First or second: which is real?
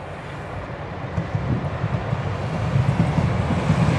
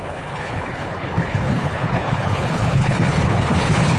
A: first